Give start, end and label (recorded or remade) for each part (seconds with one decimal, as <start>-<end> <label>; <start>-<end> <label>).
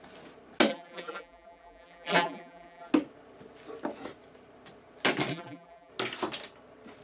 0.0-0.7 recorded; 0.7-2.9 remade; 2.9-5.3 recorded; 5.3-5.9 remade; 5.9-7.0 recorded